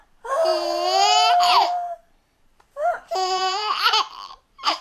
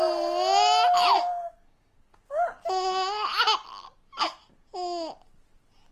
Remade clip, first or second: first